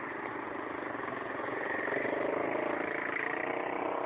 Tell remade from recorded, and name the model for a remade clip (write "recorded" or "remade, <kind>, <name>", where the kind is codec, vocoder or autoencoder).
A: recorded